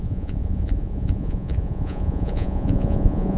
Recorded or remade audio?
remade